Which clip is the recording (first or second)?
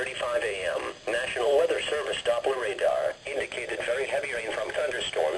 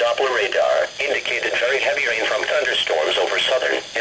second